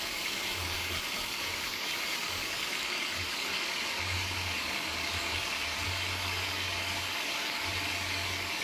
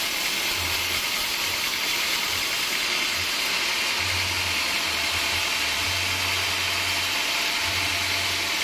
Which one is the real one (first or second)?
second